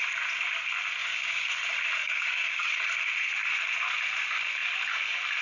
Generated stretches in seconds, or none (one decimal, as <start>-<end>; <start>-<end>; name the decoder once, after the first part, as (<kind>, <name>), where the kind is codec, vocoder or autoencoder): 1.0-1.5 (codec, DAC); 2.0-2.7